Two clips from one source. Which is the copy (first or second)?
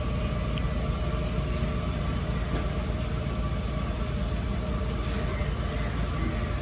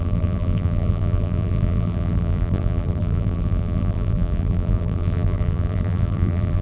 second